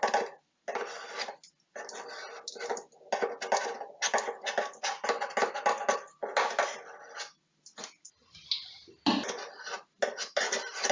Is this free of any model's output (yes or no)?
yes